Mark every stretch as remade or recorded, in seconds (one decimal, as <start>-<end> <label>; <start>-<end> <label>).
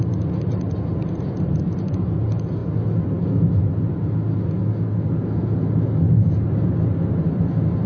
0.0-7.9 recorded